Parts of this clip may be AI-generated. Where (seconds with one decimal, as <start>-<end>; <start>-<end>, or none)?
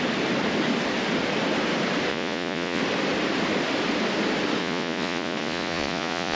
2.1-2.8; 4.6-6.4